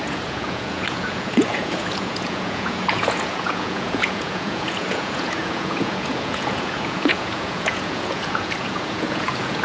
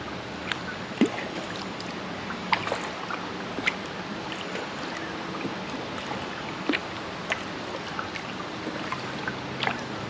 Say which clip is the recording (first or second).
second